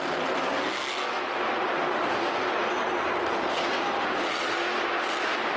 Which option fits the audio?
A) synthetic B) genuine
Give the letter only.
B